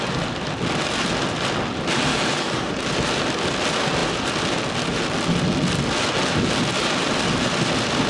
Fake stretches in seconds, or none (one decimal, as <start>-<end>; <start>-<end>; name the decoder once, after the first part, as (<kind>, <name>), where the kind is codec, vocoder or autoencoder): 2.1-2.7 (codec, DAC)